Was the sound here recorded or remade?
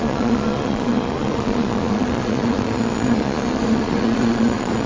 remade